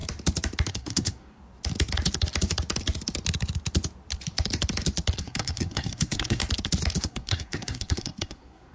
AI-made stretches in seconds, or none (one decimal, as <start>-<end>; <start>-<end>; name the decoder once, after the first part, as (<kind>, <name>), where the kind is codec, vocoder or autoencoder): 0.7-1.4 (codec, SNAC); 5.2-6.4; 7.0-8.7